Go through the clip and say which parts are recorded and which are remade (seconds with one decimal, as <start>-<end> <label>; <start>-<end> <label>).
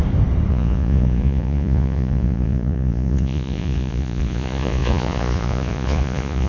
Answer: 0.0-0.5 recorded; 0.5-6.5 remade